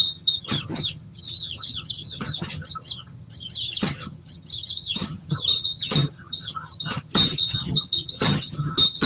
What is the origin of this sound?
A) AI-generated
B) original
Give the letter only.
A